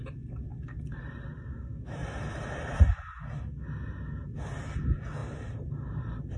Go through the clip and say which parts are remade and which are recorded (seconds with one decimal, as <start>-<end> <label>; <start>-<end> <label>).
0.0-0.5 recorded; 0.5-1.6 remade; 1.6-2.0 recorded; 2.0-2.8 remade; 2.8-5.2 recorded; 5.2-6.4 remade